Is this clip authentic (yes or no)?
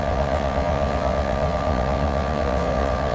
no